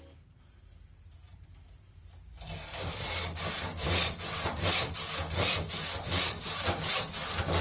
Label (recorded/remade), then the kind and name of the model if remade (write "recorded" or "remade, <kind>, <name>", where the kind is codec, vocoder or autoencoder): recorded